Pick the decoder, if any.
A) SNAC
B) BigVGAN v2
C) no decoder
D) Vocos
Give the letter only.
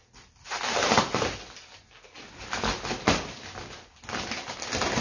C